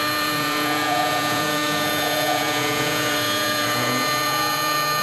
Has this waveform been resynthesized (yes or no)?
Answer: yes